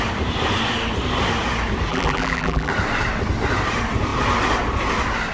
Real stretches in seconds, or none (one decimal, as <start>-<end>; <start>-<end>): 0.0-1.9; 2.7-5.3